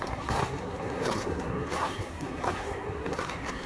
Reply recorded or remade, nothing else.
remade